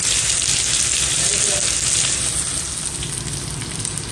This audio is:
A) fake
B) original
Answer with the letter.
B